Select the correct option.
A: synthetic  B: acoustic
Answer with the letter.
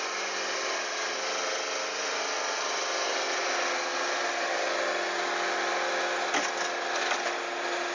B